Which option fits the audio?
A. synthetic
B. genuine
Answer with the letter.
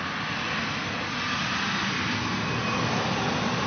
B